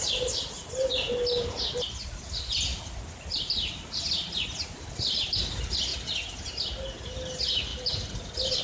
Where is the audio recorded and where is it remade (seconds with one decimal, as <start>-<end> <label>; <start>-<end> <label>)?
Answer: 0.0-8.6 recorded